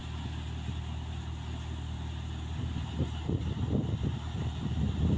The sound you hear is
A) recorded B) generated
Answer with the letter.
A